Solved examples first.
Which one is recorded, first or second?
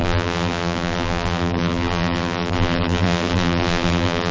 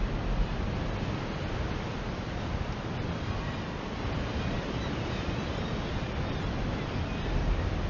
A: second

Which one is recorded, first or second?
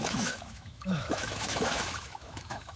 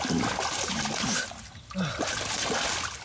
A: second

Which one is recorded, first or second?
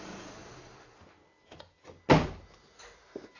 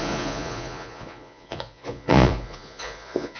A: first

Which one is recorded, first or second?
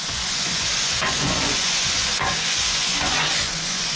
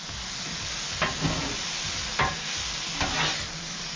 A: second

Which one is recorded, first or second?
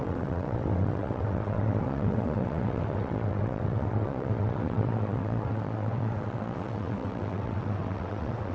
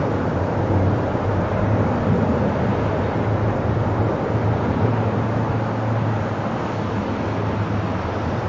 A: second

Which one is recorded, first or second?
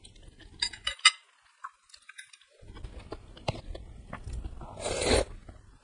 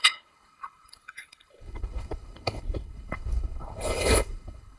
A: first